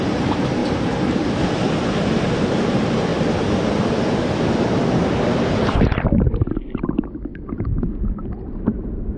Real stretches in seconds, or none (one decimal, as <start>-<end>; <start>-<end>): 3.1-6.0